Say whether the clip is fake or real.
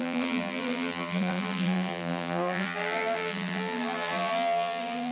fake